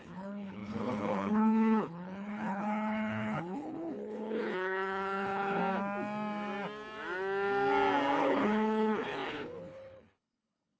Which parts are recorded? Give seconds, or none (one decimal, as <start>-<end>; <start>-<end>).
5.6-8.2